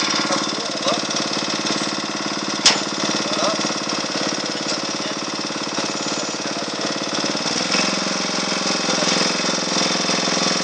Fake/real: real